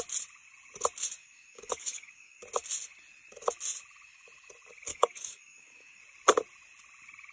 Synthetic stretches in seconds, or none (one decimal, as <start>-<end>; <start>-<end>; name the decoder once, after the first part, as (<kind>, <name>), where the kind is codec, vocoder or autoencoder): 1.2-2.4 (codec, DAC); 4.9-6.0